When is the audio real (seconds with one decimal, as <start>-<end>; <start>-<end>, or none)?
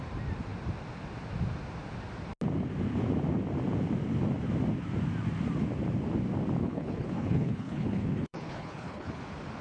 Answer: 0.0-6.6; 9.2-9.6